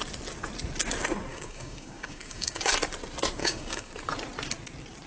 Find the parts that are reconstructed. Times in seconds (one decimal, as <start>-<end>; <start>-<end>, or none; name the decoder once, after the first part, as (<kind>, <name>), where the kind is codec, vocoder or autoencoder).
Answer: 1.3-2.7 (codec, DAC); 3.4-3.9